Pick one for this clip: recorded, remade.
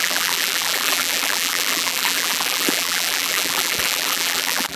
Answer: remade